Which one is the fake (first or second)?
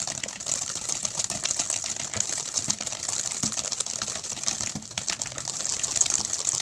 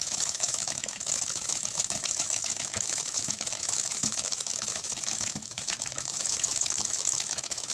second